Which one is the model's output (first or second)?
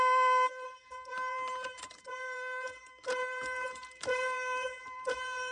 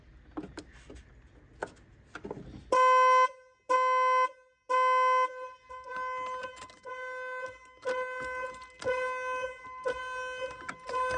first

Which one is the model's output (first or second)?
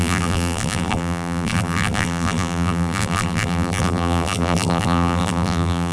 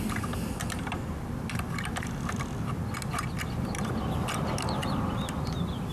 first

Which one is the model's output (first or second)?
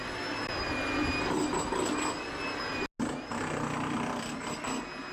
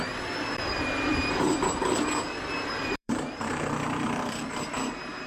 second